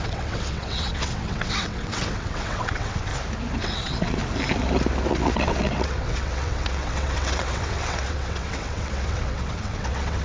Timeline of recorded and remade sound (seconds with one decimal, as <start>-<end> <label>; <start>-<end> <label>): 0.0-3.1 remade; 3.1-3.6 recorded; 3.6-4.2 remade; 4.2-5.1 recorded; 5.1-10.2 remade